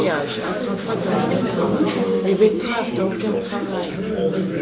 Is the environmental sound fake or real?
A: fake